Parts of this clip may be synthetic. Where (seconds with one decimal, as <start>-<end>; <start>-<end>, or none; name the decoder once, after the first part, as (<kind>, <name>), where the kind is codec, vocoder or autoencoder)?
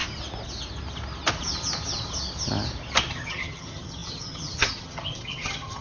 3.1-5.8 (vocoder, HiFi-GAN)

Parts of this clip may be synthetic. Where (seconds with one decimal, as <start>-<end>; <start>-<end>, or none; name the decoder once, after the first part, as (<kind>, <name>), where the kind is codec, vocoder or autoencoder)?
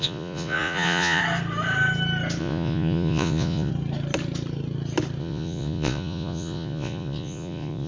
0.0-1.2 (vocoder, Vocos); 2.4-3.7; 5.2-7.9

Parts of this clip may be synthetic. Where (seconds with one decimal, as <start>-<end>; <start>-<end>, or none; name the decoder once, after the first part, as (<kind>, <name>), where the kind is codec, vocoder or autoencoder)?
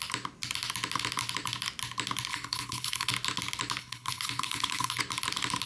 2.3-3.1 (codec, HILCodec); 3.8-5.0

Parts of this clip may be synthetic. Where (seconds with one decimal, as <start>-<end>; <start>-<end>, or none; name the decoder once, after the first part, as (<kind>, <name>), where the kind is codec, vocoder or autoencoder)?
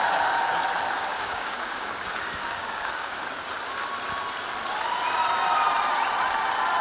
1.1-3.5 (codec, DAC)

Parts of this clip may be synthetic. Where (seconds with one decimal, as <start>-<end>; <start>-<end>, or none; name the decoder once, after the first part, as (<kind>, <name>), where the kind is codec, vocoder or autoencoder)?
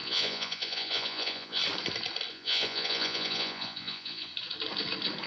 0.0-1.6 (vocoder, Vocos); 2.3-4.3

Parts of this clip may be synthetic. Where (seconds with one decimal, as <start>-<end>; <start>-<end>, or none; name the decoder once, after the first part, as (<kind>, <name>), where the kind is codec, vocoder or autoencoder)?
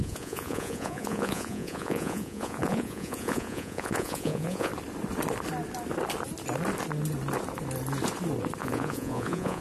0.0-4.7 (vocoder, Vocos); 8.6-9.6